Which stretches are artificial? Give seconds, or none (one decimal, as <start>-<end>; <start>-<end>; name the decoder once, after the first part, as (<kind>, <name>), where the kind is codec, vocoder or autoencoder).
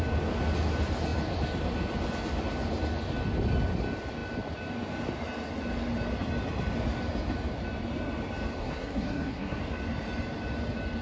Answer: 8.6-9.6 (codec, SNAC)